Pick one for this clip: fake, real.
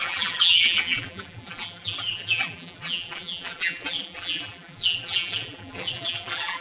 fake